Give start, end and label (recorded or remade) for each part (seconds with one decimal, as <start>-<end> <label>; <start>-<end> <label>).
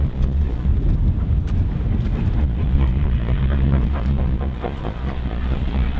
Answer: 0.0-0.7 remade; 0.7-2.4 recorded; 2.4-6.0 remade